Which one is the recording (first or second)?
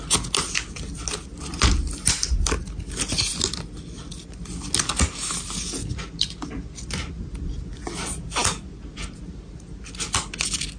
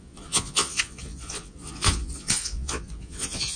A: first